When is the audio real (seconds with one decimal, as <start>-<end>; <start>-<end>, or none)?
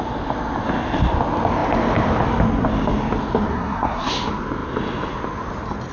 0.0-3.5; 4.1-5.9